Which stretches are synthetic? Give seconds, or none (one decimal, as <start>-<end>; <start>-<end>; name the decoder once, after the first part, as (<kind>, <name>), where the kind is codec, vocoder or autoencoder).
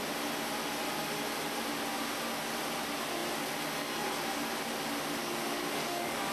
5.2-6.3 (codec, DAC)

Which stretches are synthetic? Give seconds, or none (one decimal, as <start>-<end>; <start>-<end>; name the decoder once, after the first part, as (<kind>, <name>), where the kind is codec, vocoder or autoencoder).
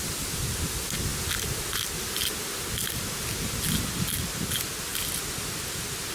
none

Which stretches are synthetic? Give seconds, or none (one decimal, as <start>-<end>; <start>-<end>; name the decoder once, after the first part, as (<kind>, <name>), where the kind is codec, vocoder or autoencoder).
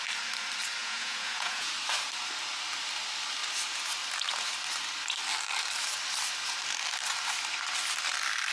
0.8-1.7 (vocoder, Vocos)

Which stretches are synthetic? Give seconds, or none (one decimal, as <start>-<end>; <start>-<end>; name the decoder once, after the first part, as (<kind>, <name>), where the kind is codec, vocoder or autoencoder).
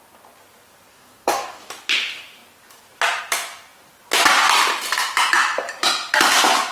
0.9-1.7 (codec, DAC)